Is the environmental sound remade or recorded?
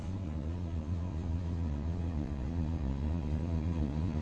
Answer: remade